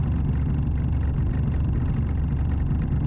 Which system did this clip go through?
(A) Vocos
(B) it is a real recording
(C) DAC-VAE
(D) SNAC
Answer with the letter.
B